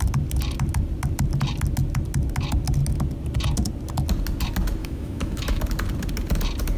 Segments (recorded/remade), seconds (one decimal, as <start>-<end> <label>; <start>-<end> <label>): 0.0-4.8 recorded; 4.8-5.6 remade; 5.6-6.8 recorded